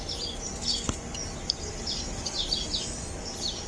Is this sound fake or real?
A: real